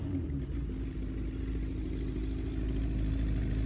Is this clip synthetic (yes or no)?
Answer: no